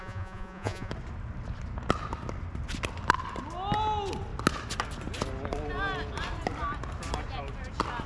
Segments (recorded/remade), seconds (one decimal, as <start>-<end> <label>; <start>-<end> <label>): 0.0-0.9 remade; 0.9-8.1 recorded